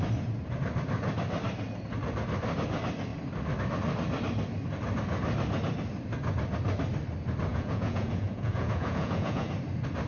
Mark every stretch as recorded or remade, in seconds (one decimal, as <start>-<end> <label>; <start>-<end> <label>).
0.0-7.5 recorded; 7.5-9.5 remade; 9.5-10.1 recorded

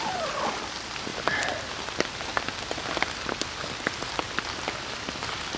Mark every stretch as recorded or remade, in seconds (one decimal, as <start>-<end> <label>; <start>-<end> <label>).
0.0-5.6 recorded

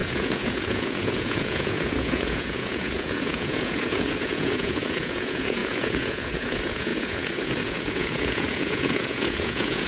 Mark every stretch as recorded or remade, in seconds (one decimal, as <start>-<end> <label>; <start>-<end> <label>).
0.0-9.9 remade

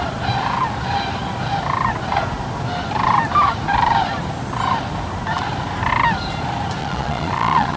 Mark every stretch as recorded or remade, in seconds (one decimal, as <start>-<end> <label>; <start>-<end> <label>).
0.0-6.8 recorded; 6.8-7.8 remade

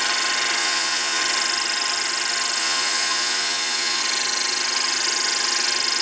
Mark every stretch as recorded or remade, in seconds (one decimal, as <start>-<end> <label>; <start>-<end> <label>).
0.0-0.6 recorded; 0.6-1.2 remade; 1.2-2.6 recorded; 2.6-4.0 remade; 4.0-6.0 recorded